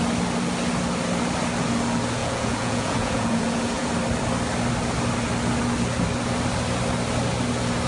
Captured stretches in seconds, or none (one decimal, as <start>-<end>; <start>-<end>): 0.0-2.2; 3.9-7.9